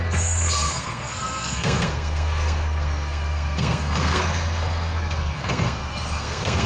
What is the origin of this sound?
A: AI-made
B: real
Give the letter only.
A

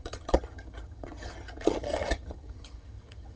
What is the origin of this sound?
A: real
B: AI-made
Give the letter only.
B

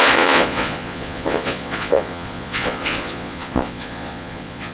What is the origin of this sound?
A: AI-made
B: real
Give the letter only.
A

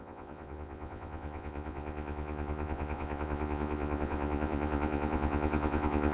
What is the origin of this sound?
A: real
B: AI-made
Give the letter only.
B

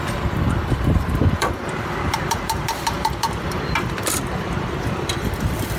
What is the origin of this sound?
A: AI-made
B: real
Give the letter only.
A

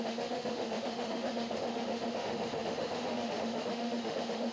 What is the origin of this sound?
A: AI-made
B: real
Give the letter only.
A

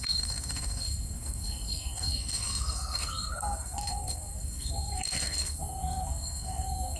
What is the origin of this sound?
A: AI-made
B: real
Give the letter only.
A